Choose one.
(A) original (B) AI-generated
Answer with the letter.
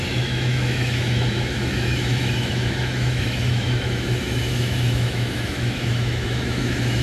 B